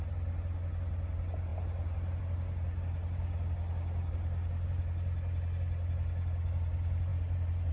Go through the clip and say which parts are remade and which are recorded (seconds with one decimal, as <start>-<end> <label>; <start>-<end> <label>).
0.0-7.7 recorded